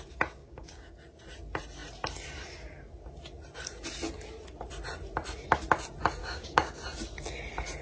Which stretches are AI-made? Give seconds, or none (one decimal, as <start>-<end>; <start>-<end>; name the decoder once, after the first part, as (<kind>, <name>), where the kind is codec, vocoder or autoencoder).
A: 0.4-1.0 (codec, DAC); 6.2-6.8